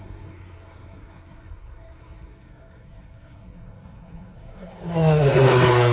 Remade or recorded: remade